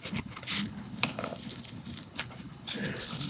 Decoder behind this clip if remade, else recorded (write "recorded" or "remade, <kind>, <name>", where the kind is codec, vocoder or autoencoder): remade, codec, HILCodec